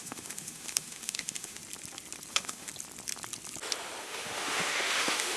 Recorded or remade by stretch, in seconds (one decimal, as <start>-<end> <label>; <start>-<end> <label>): 0.0-1.6 remade; 1.6-2.3 recorded; 2.3-2.7 remade; 2.7-4.0 recorded; 4.0-5.4 remade